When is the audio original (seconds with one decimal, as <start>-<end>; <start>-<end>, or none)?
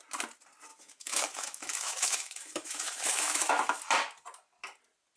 0.0-0.7; 3.8-5.2